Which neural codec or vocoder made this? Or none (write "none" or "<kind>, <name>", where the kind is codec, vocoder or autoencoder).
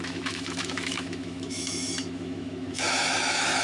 autoencoder, DAC-VAE